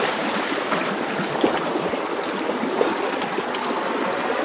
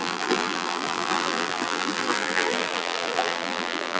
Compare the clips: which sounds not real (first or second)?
second